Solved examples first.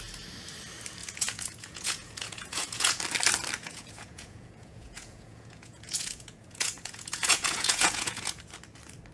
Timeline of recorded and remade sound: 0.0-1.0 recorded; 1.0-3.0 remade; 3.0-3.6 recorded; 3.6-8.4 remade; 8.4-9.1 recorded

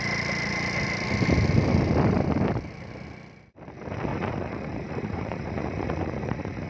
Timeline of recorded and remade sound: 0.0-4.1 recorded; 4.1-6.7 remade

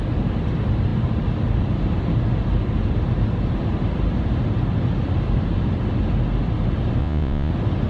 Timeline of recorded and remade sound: 0.0-7.0 recorded; 7.0-7.5 remade; 7.5-7.9 recorded

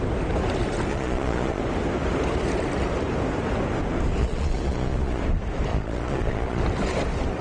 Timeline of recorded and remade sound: 0.0-0.9 recorded; 0.9-1.6 remade; 1.6-4.2 recorded; 4.2-5.2 remade; 5.2-5.7 recorded; 5.7-6.6 remade; 6.6-7.4 recorded

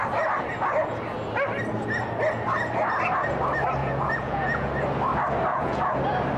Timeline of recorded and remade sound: 0.0-3.8 recorded; 3.8-4.7 remade; 4.7-5.5 recorded; 5.5-6.0 remade; 6.0-6.4 recorded

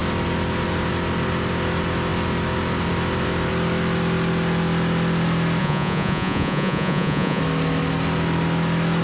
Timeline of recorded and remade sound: 0.0-5.6 recorded; 5.6-7.4 remade; 7.4-9.0 recorded

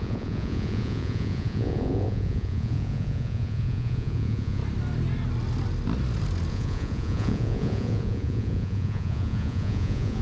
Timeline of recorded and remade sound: 0.0-4.6 remade; 4.6-6.5 recorded; 6.5-10.2 remade

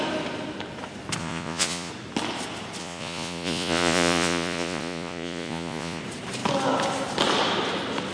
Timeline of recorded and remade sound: 0.0-1.2 recorded; 1.2-1.9 remade; 1.9-2.8 recorded; 2.8-6.0 remade; 6.0-8.1 recorded